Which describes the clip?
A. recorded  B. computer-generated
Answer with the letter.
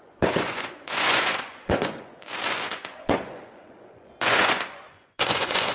B